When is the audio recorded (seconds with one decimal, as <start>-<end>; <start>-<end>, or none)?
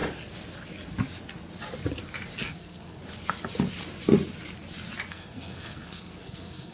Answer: 0.0-2.4; 3.0-5.1